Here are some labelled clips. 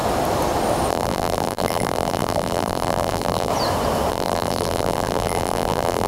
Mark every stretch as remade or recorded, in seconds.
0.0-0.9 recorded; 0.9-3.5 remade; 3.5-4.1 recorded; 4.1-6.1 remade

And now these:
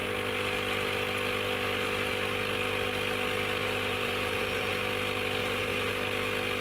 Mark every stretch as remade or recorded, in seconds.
0.0-3.6 recorded; 3.6-4.8 remade; 4.8-5.4 recorded; 5.4-5.9 remade; 5.9-6.6 recorded

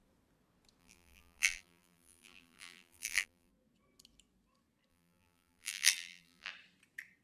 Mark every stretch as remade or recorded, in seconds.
0.0-0.8 recorded; 0.8-3.5 remade; 3.5-4.9 recorded; 4.9-6.5 remade; 6.5-7.2 recorded

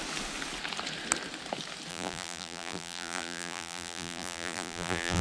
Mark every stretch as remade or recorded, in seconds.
0.0-1.9 recorded; 1.9-5.2 remade

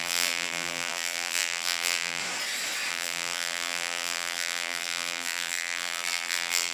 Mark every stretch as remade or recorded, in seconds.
0.0-2.2 remade; 2.2-2.9 recorded; 2.9-6.7 remade